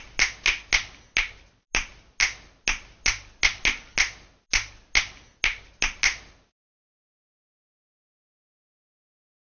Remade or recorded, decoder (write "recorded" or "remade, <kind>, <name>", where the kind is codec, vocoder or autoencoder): recorded